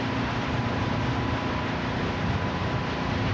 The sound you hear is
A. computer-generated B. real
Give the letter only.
B